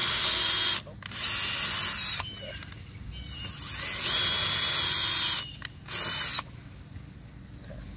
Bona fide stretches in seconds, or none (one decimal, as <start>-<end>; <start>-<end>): 0.0-8.0